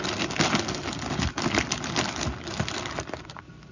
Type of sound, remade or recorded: recorded